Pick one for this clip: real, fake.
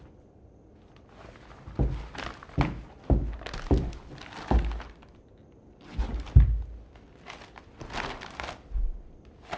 real